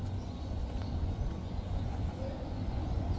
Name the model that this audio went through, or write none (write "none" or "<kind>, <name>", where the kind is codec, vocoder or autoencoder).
vocoder, Vocos